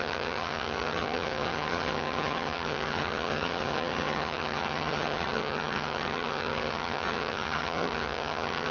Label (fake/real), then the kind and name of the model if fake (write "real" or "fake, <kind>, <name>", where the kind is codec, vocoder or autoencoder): fake, vocoder, HiFi-GAN